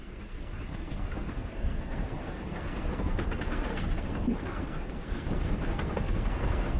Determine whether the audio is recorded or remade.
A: remade